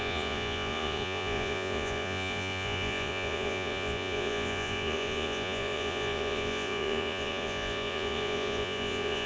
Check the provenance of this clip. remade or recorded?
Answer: remade